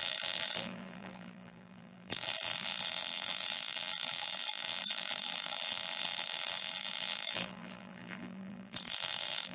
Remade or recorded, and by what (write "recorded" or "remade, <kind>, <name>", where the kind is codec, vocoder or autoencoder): remade, vocoder, BigVGAN v2